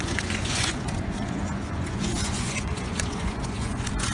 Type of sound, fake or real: fake